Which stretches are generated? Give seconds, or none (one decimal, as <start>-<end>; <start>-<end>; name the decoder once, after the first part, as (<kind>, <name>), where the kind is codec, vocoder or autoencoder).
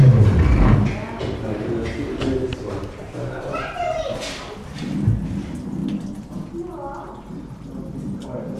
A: 3.0-4.2 (vocoder, BigVGAN v2)